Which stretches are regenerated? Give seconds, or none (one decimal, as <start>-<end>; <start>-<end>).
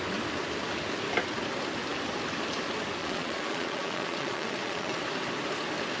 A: 3.0-5.0